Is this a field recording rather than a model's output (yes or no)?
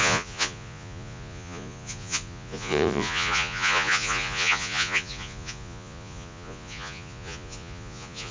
no